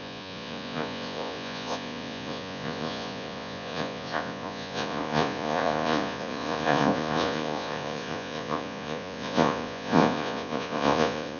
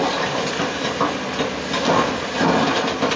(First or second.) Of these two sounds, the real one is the second